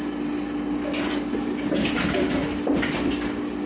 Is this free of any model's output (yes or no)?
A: yes